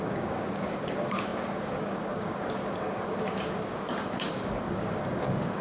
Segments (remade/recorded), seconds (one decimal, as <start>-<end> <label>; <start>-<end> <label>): 0.0-5.6 remade